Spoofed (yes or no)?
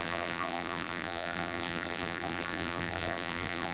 yes